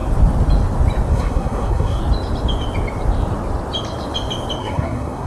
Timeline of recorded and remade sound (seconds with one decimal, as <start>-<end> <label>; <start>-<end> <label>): 0.0-1.1 recorded; 1.1-2.0 remade; 2.0-4.6 recorded; 4.6-5.3 remade